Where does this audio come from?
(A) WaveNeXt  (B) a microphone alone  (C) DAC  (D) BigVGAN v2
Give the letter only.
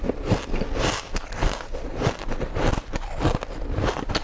B